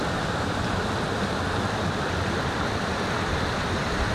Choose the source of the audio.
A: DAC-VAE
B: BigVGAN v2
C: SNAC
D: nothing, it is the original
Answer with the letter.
D